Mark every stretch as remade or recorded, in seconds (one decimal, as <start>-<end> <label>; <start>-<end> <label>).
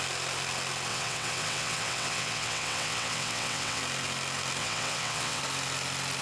0.0-0.9 recorded; 0.9-3.8 remade; 3.8-4.6 recorded; 4.6-5.4 remade; 5.4-6.2 recorded